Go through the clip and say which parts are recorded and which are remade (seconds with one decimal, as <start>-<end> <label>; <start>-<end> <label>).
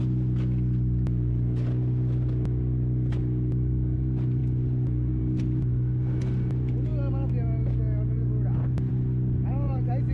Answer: 0.0-10.1 recorded